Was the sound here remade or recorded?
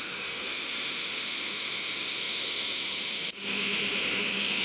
remade